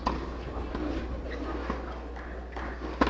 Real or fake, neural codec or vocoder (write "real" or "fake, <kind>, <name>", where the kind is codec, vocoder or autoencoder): real